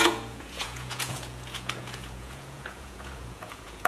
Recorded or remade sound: remade